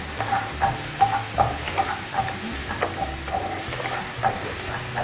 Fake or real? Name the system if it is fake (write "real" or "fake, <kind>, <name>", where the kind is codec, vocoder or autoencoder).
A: real